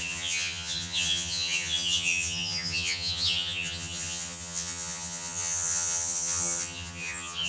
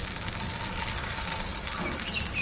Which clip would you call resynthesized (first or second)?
first